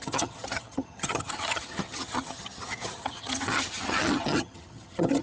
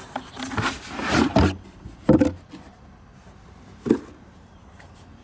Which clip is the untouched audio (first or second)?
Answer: second